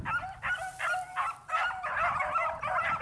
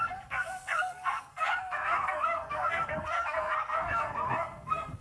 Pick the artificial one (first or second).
second